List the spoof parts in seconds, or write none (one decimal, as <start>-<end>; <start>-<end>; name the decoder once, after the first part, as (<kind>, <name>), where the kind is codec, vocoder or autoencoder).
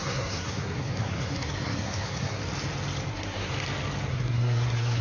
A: 0.0-2.4 (codec, SNAC); 3.1-3.5; 4.1-5.0